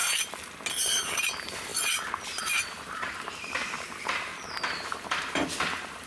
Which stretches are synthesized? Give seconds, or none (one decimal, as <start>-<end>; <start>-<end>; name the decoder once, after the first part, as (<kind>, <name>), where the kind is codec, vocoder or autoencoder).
0.8-1.7 (vocoder, BigVGAN v2); 2.4-4.3; 4.9-6.1